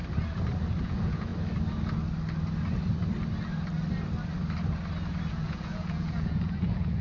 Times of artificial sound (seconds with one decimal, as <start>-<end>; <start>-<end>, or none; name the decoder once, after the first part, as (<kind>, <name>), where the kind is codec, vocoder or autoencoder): 0.8-1.3 (vocoder, Vocos); 5.3-7.0

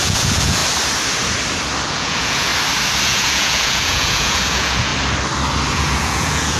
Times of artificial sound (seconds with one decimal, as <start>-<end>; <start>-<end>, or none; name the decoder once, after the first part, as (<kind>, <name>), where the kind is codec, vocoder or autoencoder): 0.0-0.6 (vocoder, Vocos); 1.9-2.5; 3.0-4.9; 5.7-6.6